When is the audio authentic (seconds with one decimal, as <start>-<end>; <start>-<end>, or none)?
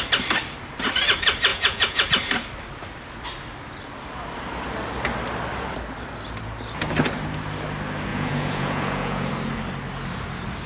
0.0-1.5; 2.1-8.1; 9.3-10.7